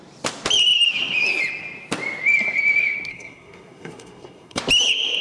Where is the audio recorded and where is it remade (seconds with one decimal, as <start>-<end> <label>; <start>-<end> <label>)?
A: 0.0-3.1 recorded; 3.1-4.6 remade; 4.6-5.2 recorded